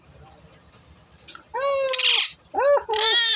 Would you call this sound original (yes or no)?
yes